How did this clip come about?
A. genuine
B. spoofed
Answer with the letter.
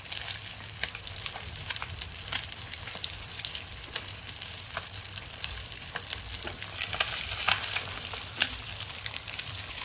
B